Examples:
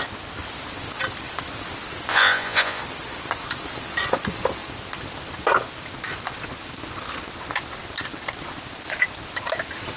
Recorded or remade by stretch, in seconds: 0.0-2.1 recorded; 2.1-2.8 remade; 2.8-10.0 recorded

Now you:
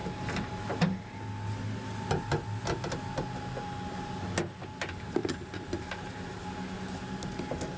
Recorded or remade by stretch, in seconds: 0.0-7.8 recorded